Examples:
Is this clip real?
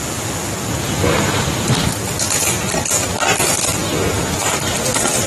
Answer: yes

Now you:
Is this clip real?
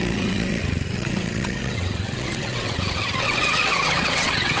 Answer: no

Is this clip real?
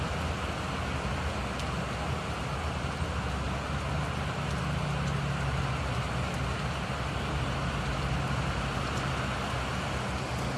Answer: yes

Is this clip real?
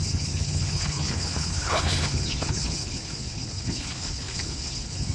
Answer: no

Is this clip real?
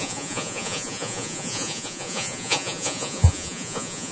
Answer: no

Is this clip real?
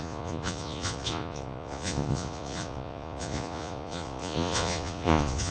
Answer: no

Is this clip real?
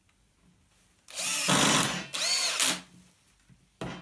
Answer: yes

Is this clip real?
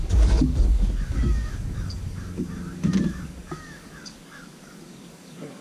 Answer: no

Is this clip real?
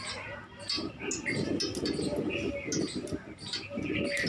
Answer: yes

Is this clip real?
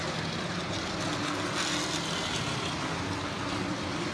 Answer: yes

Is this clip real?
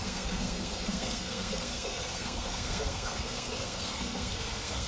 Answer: no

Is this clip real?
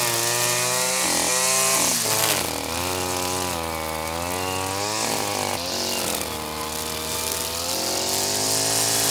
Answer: yes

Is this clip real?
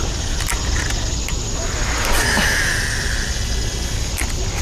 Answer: yes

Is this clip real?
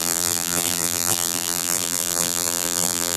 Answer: no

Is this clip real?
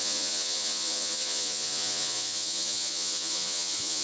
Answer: no